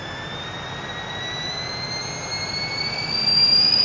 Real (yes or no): yes